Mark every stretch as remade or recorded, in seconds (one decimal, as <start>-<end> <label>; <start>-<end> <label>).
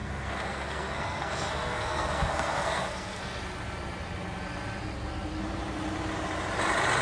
0.0-3.2 remade; 3.2-7.0 recorded